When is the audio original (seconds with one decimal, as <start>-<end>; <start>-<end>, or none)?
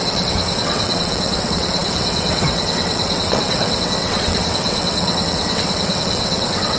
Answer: none